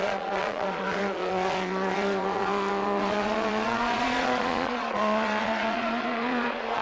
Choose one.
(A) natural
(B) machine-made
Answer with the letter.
B